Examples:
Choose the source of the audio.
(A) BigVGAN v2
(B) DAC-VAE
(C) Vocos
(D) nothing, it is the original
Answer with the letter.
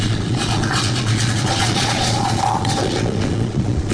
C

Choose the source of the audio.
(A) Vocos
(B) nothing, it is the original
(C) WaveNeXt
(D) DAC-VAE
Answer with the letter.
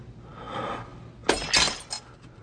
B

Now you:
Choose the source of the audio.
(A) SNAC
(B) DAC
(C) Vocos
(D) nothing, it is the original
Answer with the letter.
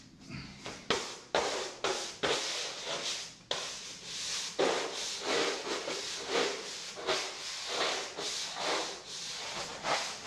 D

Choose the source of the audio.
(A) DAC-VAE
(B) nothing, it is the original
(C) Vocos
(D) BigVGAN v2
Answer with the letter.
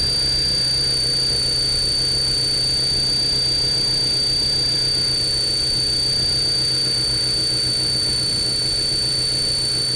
B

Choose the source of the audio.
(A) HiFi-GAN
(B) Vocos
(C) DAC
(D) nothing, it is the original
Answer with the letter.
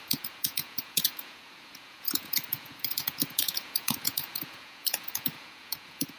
B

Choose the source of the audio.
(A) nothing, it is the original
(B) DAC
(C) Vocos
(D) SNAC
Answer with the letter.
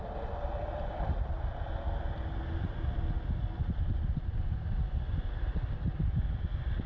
A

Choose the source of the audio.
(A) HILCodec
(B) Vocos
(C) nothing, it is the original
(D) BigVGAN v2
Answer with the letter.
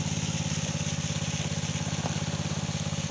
C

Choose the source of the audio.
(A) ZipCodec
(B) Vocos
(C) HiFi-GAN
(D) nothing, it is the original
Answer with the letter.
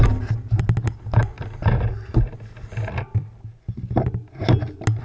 D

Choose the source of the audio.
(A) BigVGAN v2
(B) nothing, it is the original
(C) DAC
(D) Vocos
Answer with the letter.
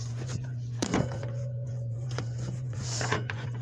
D